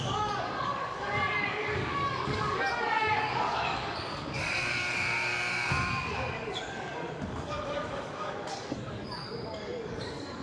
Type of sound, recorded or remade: remade